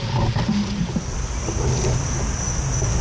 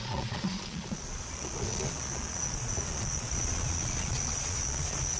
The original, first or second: first